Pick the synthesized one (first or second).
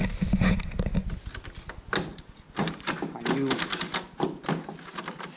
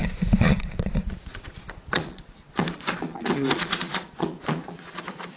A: second